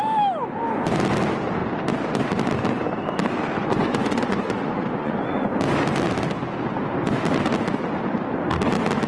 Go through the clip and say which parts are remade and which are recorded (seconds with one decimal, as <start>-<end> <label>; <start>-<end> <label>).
0.0-3.6 recorded; 3.6-5.5 remade; 5.5-9.1 recorded